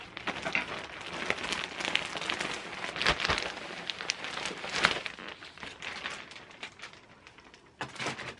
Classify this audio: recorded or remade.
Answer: recorded